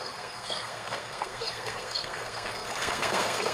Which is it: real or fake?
fake